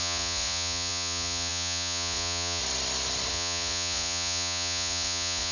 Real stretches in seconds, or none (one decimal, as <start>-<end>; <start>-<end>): 2.6-3.3